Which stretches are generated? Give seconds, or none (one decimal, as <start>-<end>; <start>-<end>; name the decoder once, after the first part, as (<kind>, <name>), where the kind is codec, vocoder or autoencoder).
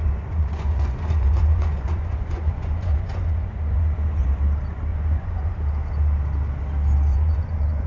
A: 0.0-4.2 (vocoder, Vocos); 4.9-5.5; 7.1-7.9